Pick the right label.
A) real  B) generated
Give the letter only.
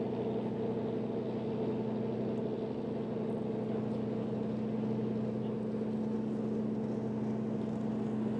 A